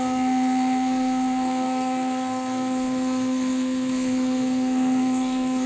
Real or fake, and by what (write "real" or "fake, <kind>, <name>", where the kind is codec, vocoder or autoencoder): fake, codec, SNAC